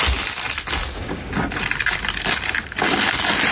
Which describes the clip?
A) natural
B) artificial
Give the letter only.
A